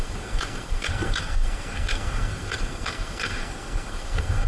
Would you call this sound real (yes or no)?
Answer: no